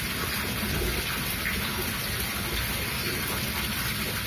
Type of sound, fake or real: real